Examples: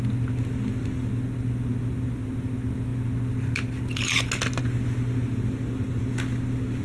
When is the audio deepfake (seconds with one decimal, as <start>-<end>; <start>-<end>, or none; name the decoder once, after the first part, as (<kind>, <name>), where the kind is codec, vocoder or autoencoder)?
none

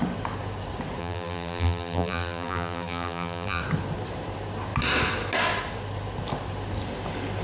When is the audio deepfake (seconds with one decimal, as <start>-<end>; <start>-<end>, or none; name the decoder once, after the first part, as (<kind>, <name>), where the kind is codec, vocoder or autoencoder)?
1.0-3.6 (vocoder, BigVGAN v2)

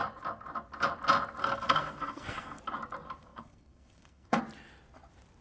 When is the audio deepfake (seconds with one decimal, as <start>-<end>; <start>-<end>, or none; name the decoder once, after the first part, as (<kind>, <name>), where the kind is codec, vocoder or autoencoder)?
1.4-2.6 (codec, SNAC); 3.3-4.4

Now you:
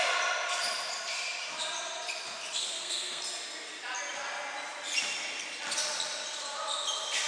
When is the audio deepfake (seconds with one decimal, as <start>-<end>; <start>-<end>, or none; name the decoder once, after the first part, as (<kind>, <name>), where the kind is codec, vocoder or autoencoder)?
2.6-3.2 (codec, SNAC)